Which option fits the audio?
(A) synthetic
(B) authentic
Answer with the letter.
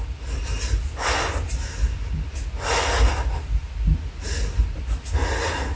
B